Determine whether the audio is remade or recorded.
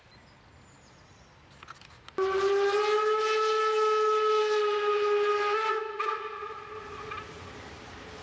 recorded